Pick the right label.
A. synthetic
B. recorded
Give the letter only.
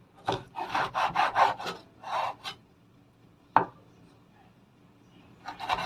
A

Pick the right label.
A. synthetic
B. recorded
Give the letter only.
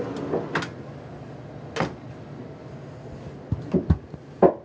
B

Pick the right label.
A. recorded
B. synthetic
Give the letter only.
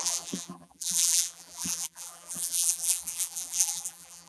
B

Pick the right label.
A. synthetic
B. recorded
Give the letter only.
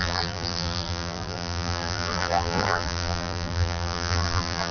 A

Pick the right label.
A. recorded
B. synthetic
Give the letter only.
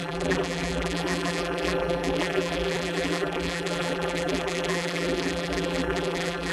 B